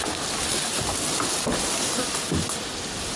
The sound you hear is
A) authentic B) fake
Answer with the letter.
A